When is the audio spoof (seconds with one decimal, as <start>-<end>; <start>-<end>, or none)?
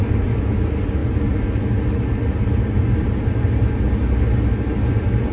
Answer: none